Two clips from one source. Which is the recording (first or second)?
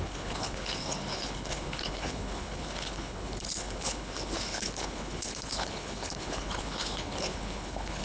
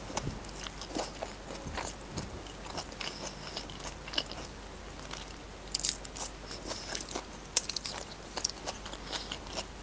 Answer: second